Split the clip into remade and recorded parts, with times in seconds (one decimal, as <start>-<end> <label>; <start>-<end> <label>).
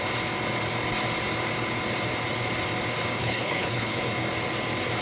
0.0-3.2 recorded; 3.2-4.0 remade; 4.0-5.0 recorded